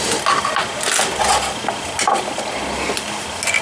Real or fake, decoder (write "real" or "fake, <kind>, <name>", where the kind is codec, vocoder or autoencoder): real